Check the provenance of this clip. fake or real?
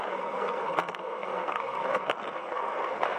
fake